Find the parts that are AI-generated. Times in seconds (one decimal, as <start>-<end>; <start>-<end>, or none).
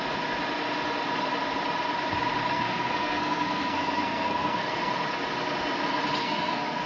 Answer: 2.5-4.9; 6.2-6.9